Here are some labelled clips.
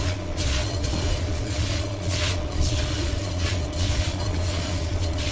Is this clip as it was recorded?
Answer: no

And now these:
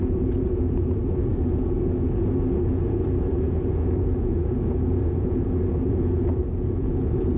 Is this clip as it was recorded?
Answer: no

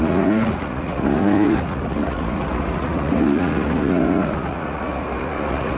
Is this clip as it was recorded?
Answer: no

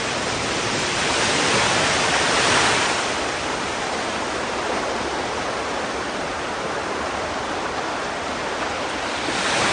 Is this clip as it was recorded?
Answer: yes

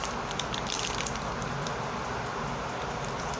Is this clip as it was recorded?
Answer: yes